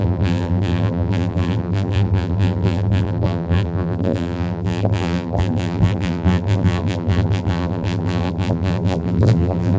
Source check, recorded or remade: remade